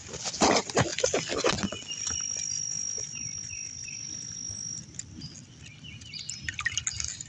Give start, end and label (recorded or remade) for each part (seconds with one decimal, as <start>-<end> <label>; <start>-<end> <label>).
0.0-7.3 recorded